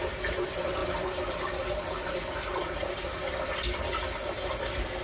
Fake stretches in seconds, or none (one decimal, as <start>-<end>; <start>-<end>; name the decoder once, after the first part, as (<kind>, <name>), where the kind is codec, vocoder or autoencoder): 0.8-3.8 (vocoder, BigVGAN v2)